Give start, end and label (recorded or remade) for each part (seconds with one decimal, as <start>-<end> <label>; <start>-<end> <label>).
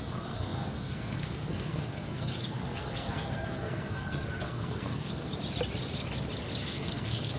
0.0-5.3 remade; 5.3-6.6 recorded; 6.6-7.4 remade